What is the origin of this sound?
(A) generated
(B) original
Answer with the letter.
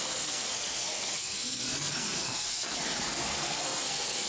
A